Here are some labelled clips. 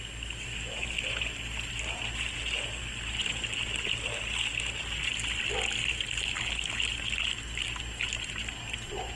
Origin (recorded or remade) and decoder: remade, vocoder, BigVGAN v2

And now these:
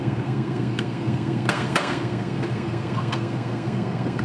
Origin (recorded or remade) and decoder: remade, codec, SNAC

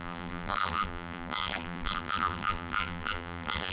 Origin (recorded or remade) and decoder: remade, vocoder, BigVGAN v2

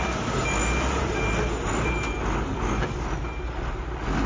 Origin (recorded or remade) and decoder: recorded